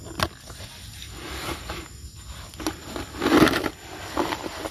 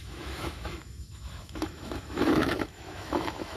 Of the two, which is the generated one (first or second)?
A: second